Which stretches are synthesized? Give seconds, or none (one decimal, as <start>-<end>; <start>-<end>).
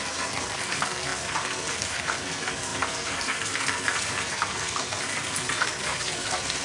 0.0-6.6